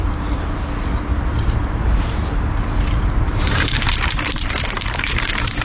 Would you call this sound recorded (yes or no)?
no